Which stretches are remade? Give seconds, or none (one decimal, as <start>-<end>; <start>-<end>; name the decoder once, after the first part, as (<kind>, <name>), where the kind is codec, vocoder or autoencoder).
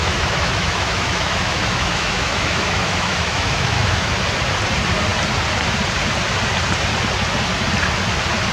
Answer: 0.0-4.1 (autoencoder, DAC-VAE)